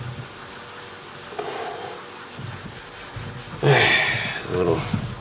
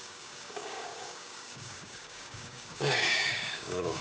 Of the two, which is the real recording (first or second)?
first